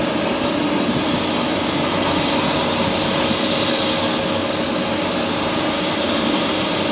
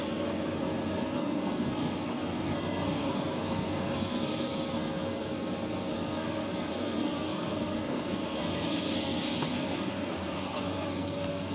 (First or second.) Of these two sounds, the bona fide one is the first